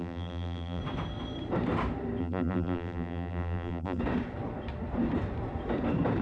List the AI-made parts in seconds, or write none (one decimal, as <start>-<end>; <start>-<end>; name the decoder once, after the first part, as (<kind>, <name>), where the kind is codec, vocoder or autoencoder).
0.0-0.8 (vocoder, BigVGAN v2); 2.2-4.0